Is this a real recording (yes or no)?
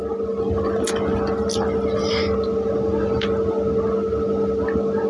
yes